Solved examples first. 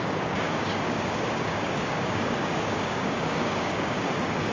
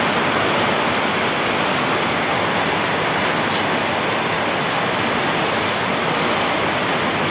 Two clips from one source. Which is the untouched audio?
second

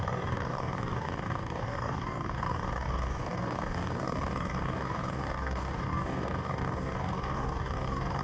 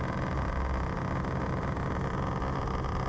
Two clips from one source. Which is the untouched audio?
second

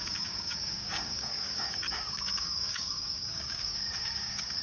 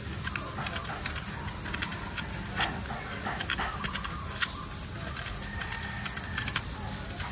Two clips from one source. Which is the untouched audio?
second